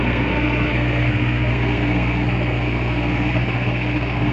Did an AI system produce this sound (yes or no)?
yes